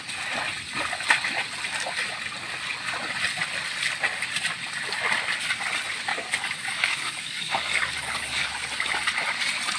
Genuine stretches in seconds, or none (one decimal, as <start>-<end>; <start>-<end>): 0.0-6.1; 8.5-9.8